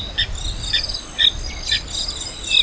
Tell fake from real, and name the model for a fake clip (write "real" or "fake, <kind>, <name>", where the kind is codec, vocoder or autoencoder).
real